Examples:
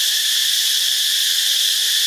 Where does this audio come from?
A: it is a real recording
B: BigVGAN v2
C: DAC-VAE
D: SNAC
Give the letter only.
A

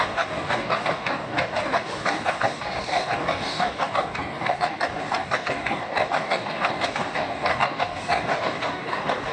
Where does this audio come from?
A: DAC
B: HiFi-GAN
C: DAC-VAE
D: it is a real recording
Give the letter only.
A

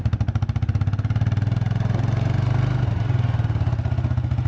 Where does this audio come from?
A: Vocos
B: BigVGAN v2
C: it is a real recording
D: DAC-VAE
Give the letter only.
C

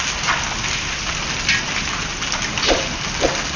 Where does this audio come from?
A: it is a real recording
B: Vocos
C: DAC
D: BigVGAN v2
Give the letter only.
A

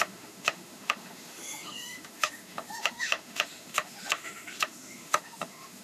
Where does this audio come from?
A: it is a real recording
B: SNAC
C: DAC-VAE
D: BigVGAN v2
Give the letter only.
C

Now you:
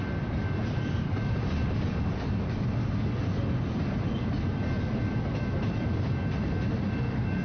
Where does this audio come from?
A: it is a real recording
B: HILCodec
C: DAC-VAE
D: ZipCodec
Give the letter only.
A